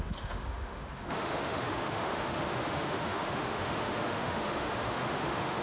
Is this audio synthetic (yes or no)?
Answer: yes